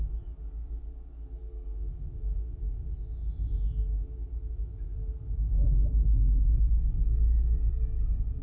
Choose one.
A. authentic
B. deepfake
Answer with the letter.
A